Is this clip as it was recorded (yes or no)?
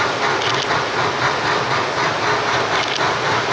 yes